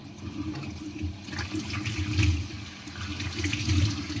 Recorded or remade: recorded